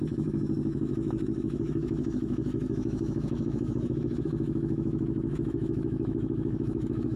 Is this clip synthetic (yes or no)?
yes